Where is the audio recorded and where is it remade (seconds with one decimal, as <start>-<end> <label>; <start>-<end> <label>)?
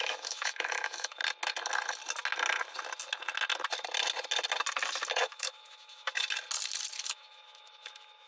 0.0-1.2 remade; 1.2-5.1 recorded; 5.1-6.2 remade; 6.2-7.0 recorded; 7.0-8.3 remade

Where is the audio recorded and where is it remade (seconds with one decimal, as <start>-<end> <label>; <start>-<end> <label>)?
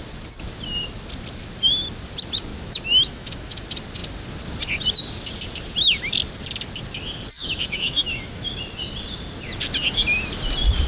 0.0-2.5 recorded; 2.5-3.6 remade; 3.6-7.3 recorded; 7.3-8.5 remade; 8.5-10.9 recorded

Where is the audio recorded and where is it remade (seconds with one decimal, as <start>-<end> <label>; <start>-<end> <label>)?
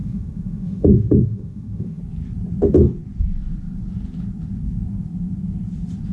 0.0-2.0 remade; 2.0-6.1 recorded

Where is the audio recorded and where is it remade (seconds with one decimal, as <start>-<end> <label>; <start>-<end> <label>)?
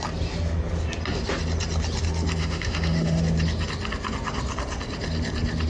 0.0-2.4 recorded; 2.4-3.2 remade; 3.2-5.7 recorded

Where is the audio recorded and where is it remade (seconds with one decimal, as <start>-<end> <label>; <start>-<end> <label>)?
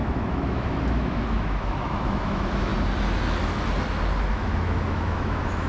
0.0-2.7 remade; 2.7-4.3 recorded; 4.3-5.7 remade